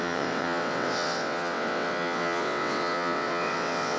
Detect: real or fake fake